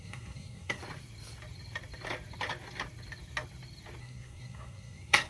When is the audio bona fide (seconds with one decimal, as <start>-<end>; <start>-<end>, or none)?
0.8-4.0